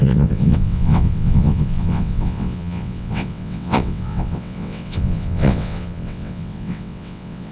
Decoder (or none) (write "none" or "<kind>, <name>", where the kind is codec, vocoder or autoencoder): vocoder, WaveNeXt